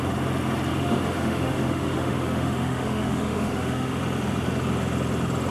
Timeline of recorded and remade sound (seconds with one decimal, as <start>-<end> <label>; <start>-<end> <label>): 0.0-0.7 recorded; 0.7-4.0 remade; 4.0-5.5 recorded